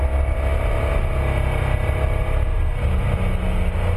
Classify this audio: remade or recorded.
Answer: recorded